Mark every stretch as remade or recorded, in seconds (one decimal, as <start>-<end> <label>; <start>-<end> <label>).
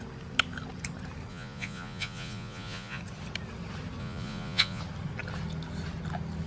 0.0-1.3 recorded; 1.3-3.0 remade; 3.0-4.0 recorded; 4.0-4.8 remade; 4.8-6.5 recorded